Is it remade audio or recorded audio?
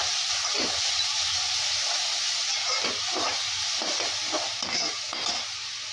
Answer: recorded